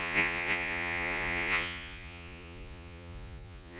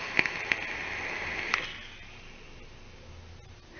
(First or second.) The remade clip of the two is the first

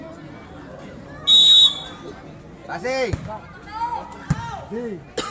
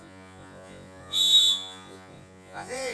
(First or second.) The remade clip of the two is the second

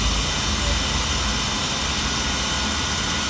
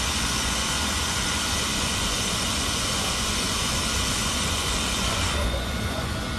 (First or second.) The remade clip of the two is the second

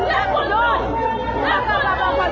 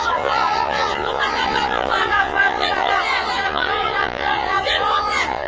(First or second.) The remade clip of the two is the second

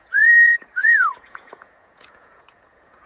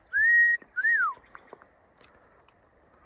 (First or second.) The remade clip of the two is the first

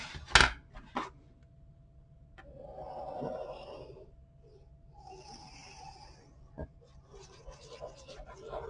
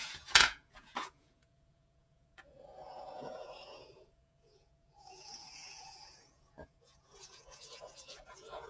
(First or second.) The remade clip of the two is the second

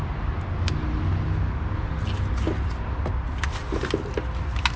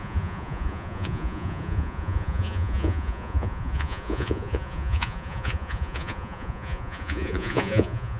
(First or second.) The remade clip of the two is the second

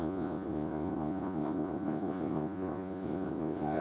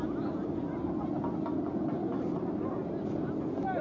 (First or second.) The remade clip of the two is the first